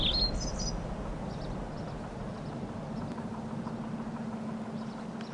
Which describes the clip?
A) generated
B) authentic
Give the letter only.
B